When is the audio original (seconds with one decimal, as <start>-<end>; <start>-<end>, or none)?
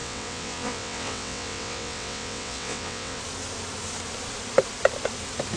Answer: 3.2-5.6